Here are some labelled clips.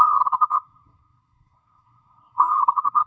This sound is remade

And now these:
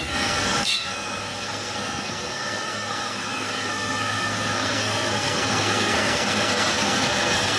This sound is remade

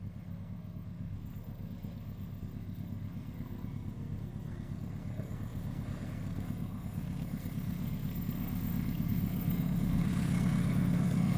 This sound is remade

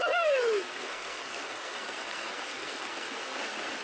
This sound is remade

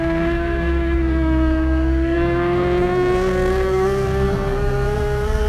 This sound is remade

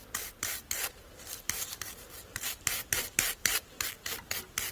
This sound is recorded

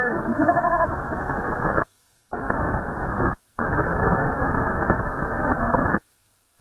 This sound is remade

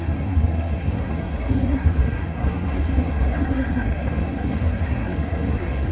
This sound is remade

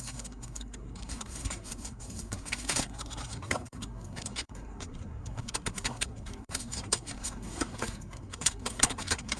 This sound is remade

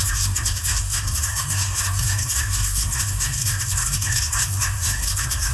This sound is remade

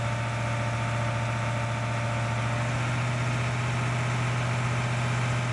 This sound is recorded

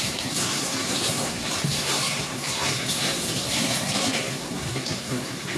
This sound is remade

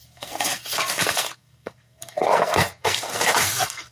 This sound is remade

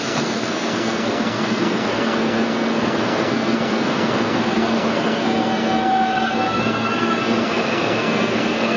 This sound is remade